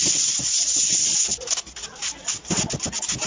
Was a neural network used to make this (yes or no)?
no